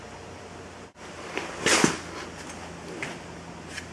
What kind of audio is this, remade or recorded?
recorded